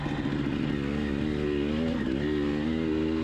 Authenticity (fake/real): real